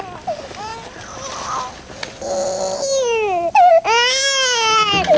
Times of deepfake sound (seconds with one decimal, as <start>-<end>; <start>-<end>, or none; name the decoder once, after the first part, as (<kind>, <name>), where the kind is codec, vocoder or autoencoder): none